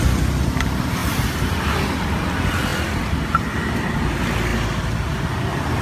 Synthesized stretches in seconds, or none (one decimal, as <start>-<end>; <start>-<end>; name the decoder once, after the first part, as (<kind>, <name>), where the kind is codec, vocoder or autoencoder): 1.0-1.7 (vocoder, BigVGAN v2)